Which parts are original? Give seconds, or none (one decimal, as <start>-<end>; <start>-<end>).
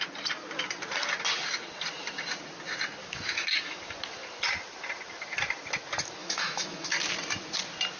0.0-3.0; 3.8-6.2; 6.9-8.0